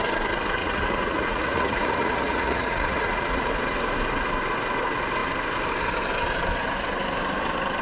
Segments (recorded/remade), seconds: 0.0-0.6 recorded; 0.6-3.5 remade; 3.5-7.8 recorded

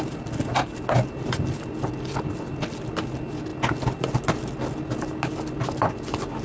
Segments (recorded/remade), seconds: 0.0-6.4 recorded

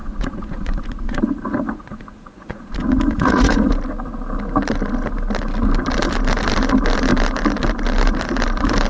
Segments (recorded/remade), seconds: 0.0-3.7 remade; 3.7-8.9 recorded

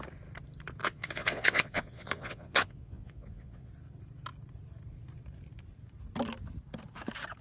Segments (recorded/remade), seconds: 0.0-0.8 recorded; 0.8-3.7 remade; 3.7-7.4 recorded

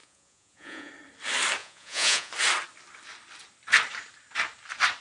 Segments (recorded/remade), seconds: 0.0-0.9 remade; 0.9-1.6 recorded; 1.6-2.3 remade; 2.3-5.0 recorded

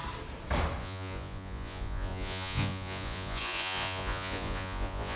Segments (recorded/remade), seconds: 0.0-0.8 recorded; 0.8-5.2 remade